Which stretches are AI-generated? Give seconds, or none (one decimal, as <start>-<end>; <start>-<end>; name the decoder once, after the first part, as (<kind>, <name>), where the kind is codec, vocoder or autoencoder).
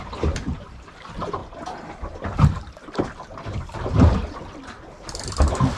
0.0-1.4 (vocoder, BigVGAN v2); 1.9-5.8